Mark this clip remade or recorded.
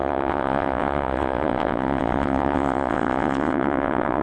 remade